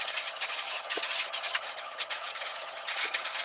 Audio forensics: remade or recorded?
remade